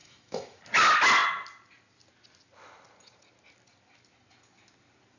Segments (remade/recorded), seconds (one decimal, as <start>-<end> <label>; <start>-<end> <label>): 0.0-0.6 remade; 0.6-5.2 recorded